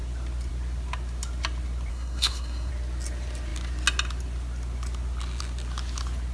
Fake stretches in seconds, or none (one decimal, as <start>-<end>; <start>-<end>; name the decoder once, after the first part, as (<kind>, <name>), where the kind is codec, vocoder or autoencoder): 1.9-2.7 (codec, SNAC)